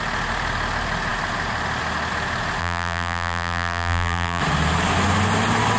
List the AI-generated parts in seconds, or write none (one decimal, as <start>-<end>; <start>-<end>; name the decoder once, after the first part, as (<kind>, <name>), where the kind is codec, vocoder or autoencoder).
2.6-4.4 (vocoder, BigVGAN v2)